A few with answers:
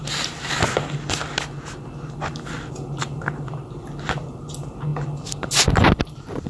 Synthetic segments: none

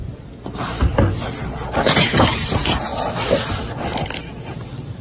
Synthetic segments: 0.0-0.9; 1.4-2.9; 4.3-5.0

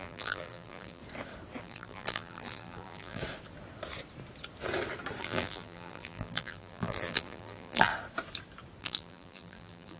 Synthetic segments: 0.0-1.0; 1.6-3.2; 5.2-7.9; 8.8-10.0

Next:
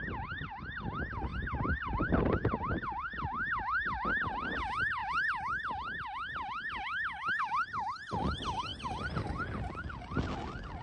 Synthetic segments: 1.3-2.1

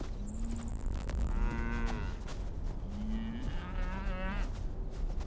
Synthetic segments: 0.7-1.3